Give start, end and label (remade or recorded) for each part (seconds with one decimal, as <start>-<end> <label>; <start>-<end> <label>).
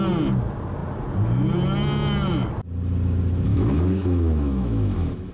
0.0-3.5 recorded; 3.5-5.3 remade